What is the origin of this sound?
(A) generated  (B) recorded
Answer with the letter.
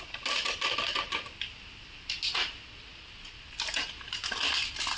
B